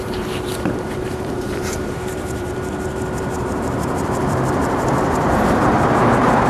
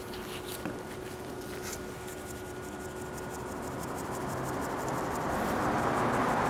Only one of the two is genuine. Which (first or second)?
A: second